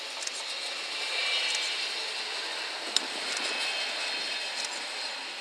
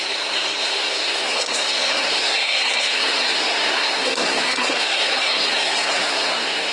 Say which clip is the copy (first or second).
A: second